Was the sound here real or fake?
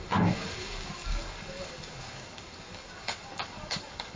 fake